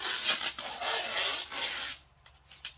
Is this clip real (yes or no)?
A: yes